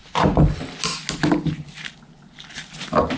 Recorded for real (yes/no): yes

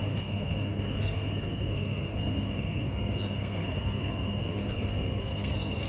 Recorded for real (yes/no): no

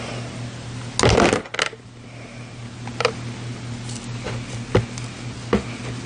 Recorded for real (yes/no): yes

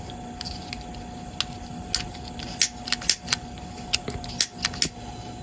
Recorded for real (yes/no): yes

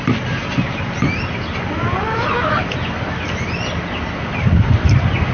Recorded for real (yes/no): yes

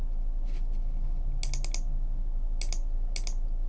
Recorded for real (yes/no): yes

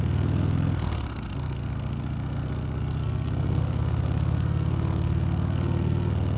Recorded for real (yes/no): no